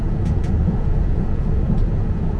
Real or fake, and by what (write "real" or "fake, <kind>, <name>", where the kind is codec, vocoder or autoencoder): fake, vocoder, Vocos